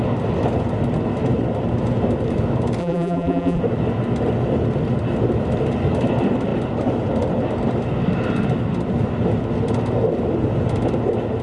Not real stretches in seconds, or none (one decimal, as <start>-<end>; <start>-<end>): 2.8-3.6